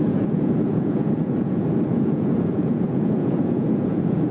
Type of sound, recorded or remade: remade